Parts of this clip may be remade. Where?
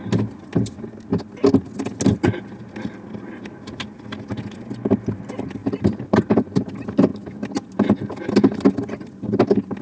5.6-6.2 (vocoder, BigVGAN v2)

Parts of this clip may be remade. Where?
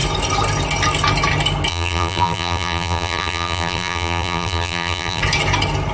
1.7-5.2 (vocoder, BigVGAN v2)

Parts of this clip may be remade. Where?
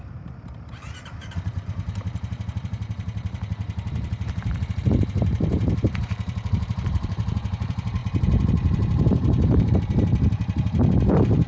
0.0-11.5 (vocoder, BigVGAN v2)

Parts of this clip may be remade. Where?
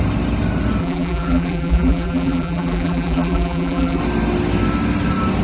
0.8-4.0 (vocoder, BigVGAN v2)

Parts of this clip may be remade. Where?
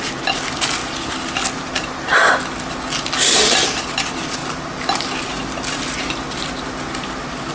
none